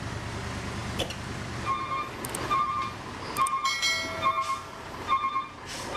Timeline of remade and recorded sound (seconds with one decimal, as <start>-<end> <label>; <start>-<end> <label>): 0.0-6.0 recorded